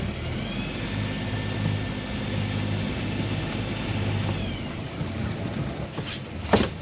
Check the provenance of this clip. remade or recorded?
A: recorded